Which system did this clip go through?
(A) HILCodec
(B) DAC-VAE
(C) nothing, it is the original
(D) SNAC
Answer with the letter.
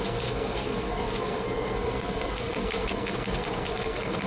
D